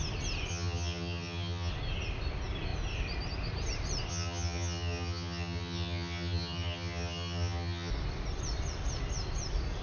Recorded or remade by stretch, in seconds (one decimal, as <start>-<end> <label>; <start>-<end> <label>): 0.0-0.5 recorded; 0.5-1.7 remade; 1.7-4.1 recorded; 4.1-7.9 remade; 7.9-9.8 recorded